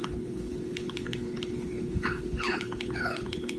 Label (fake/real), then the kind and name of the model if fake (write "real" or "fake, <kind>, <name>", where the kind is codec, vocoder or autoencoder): fake, codec, HILCodec